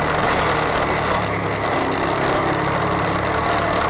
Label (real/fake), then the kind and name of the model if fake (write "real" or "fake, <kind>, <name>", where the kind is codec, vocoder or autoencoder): real